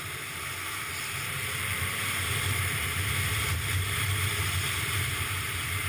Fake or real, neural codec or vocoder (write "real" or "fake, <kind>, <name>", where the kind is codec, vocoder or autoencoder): fake, vocoder, BigVGAN v2